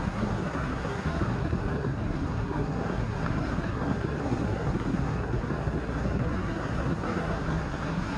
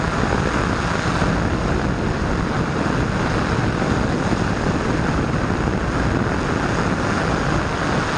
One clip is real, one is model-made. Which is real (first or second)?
second